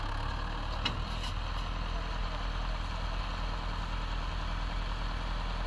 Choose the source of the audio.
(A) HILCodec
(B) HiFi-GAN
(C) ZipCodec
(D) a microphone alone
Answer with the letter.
D